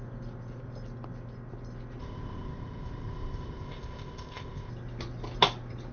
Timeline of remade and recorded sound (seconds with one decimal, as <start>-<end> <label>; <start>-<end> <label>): 0.0-2.0 recorded; 2.0-4.7 remade; 4.7-5.9 recorded